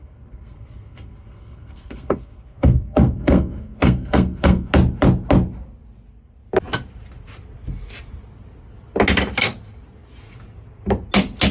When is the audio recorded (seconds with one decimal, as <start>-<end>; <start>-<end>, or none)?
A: 4.7-11.5